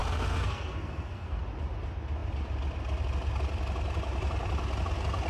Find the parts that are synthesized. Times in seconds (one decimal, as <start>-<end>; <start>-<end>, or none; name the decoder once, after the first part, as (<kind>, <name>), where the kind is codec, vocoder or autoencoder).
0.0-1.4 (codec, SNAC)

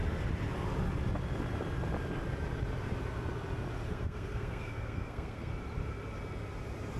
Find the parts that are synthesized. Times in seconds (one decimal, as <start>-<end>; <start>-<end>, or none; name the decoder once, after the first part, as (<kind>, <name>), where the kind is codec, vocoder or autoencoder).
3.9-5.5 (codec, SNAC)

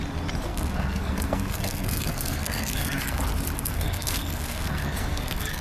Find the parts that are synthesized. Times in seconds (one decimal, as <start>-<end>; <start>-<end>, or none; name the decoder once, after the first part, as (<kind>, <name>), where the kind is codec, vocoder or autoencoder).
0.4-3.2 (codec, SNAC); 3.7-5.6

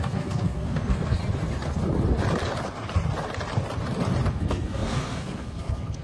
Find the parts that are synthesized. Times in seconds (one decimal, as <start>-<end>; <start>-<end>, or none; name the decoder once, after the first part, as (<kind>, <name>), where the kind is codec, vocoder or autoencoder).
0.0-1.2 (codec, SNAC); 4.3-6.0

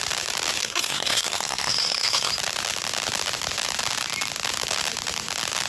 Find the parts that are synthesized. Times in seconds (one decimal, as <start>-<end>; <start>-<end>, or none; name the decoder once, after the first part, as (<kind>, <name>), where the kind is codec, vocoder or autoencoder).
0.6-2.3 (codec, SNAC)

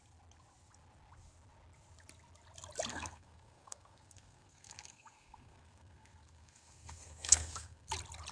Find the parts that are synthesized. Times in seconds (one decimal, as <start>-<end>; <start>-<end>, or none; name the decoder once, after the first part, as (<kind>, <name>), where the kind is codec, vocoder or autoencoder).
2.9-7.9 (codec, SNAC)

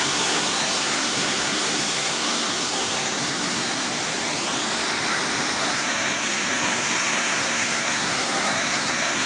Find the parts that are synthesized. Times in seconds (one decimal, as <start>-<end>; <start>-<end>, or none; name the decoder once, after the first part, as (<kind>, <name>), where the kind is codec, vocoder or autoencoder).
0.0-3.9 (codec, SNAC); 5.6-9.3

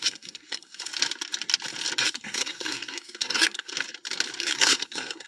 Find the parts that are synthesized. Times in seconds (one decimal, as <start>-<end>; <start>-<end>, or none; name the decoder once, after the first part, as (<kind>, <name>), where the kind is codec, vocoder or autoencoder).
0.0-0.9 (codec, SNAC); 2.0-3.7; 4.4-5.3